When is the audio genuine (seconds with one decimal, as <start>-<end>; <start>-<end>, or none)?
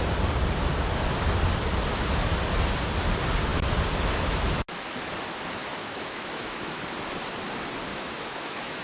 0.0-5.6; 6.8-7.9